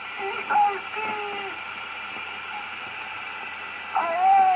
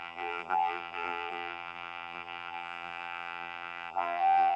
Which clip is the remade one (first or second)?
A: second